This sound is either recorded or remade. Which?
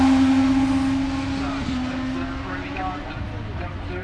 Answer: recorded